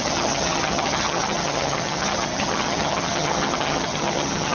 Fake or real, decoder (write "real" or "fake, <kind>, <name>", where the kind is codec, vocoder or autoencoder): fake, vocoder, HiFi-GAN